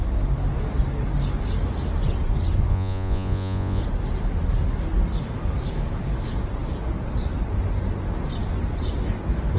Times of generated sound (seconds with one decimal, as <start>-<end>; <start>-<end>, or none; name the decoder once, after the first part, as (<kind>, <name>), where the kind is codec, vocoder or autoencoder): 2.7-3.8 (vocoder, Vocos)